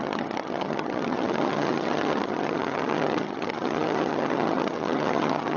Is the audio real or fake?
fake